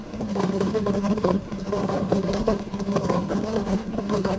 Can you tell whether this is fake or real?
fake